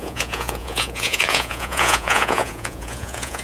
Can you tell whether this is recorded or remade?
remade